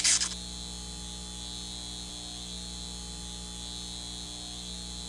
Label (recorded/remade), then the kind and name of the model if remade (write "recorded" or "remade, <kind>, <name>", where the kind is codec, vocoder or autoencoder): recorded